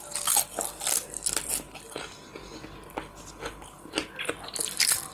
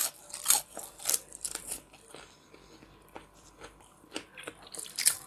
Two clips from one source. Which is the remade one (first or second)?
second